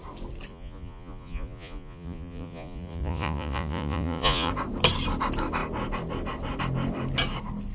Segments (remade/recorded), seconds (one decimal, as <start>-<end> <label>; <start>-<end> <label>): 0.0-0.5 recorded; 0.5-4.5 remade; 4.5-7.7 recorded

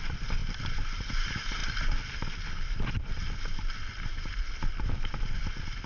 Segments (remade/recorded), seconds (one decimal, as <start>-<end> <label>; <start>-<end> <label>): 0.0-5.9 recorded

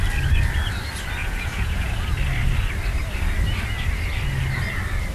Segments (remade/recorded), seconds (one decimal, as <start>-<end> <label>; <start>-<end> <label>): 0.0-1.2 recorded; 1.2-1.9 remade; 1.9-5.1 recorded

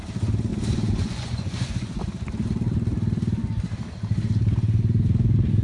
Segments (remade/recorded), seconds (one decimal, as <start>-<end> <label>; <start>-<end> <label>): 0.0-0.5 recorded; 0.5-2.0 remade; 2.0-5.6 recorded

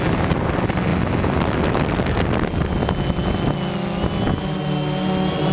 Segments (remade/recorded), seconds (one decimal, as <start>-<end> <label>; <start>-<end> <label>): 0.0-5.5 recorded

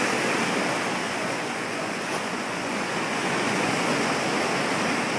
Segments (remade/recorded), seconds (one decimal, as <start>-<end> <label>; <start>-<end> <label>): 0.0-1.0 recorded; 1.0-4.1 remade; 4.1-5.2 recorded